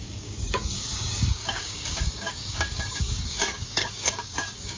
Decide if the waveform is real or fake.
fake